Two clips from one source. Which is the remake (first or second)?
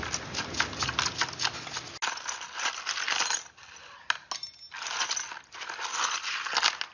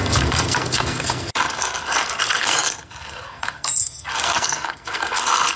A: second